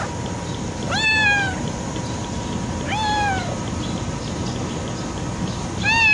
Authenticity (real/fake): real